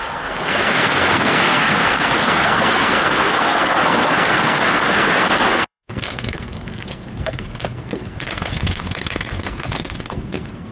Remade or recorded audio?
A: remade